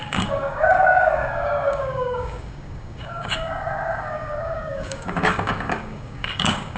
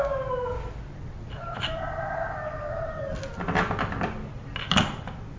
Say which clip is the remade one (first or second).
first